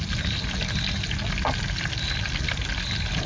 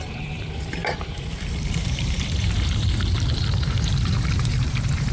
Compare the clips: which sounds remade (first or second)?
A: second